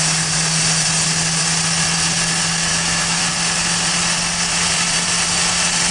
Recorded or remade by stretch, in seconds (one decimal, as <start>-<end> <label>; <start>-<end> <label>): 0.0-2.7 recorded; 2.7-3.2 remade; 3.2-5.9 recorded